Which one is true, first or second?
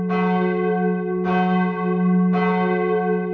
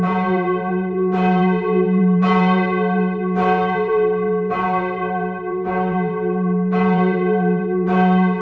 first